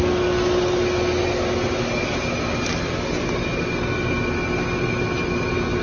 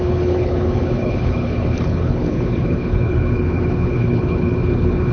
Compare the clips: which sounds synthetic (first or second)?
second